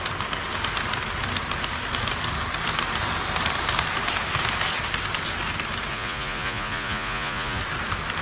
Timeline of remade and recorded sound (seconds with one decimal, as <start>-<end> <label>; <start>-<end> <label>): 0.0-5.9 recorded; 5.9-7.6 remade; 7.6-8.2 recorded